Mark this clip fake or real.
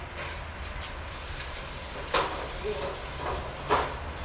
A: real